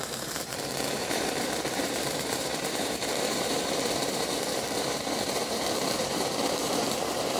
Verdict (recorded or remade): remade